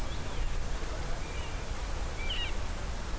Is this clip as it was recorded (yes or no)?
yes